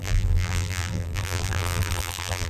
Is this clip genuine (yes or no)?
no